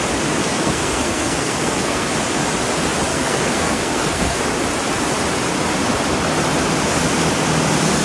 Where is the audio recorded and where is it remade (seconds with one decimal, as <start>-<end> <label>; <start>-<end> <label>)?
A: 0.0-0.4 recorded; 0.4-2.1 remade; 2.1-3.1 recorded; 3.1-4.4 remade; 4.4-8.0 recorded

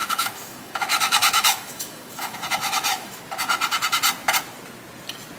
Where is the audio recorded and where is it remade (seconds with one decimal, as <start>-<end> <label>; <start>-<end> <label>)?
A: 0.0-3.2 remade; 3.2-5.4 recorded

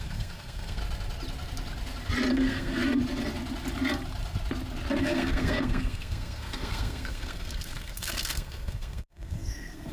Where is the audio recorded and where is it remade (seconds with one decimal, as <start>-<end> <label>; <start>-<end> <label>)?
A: 0.0-0.8 remade; 0.8-2.3 recorded; 2.3-2.8 remade; 2.8-5.0 recorded; 5.0-9.9 remade

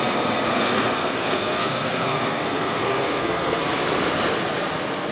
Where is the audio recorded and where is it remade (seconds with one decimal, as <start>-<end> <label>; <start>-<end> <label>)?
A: 0.0-0.5 recorded; 0.5-3.6 remade; 3.6-5.1 recorded

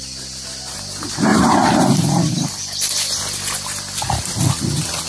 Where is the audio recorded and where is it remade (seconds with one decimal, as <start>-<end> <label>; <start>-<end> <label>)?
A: 0.0-1.3 recorded; 1.3-4.4 remade; 4.4-5.1 recorded